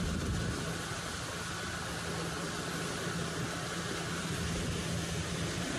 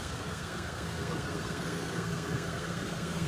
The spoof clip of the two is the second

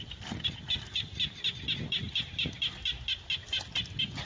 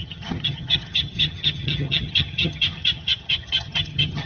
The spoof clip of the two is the second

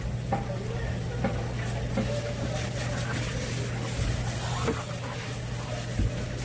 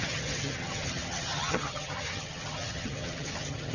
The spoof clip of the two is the second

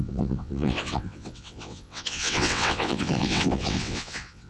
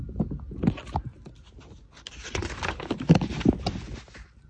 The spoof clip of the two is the first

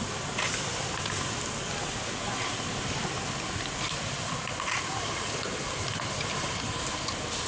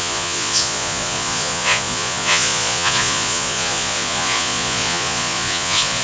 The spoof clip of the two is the second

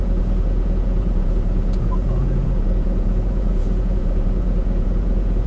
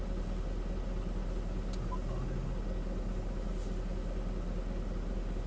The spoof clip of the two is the first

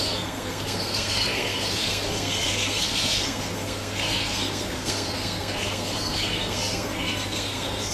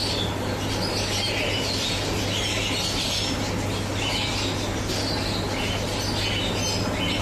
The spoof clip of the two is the first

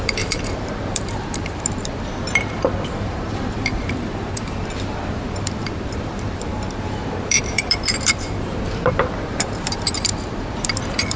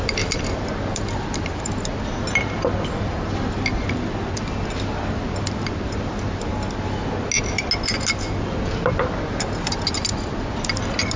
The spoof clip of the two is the first